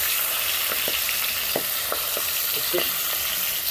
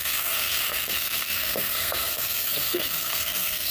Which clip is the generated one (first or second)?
second